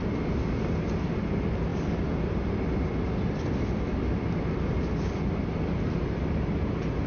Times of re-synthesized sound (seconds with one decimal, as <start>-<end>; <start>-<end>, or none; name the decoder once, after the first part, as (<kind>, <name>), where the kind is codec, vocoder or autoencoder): none